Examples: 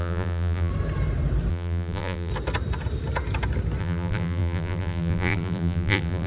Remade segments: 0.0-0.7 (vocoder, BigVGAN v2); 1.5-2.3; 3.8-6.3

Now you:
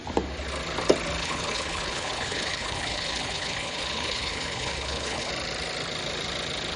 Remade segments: 1.2-5.3 (codec, HILCodec)

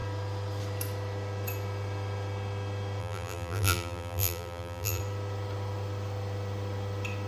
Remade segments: 3.0-5.0 (vocoder, BigVGAN v2)

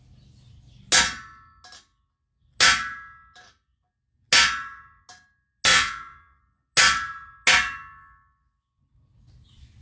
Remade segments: 5.7-6.4 (vocoder, Vocos)

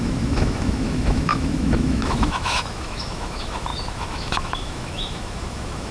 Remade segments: 0.0-5.9 (autoencoder, DAC-VAE)

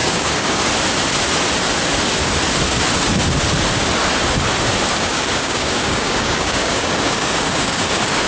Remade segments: 0.0-0.6 (codec, DAC); 4.9-8.3